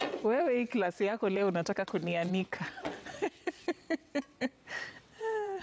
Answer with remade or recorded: remade